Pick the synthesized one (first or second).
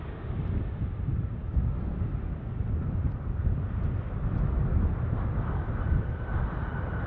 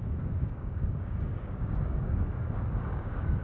second